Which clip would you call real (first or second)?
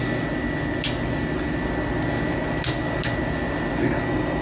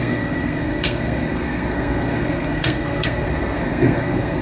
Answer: first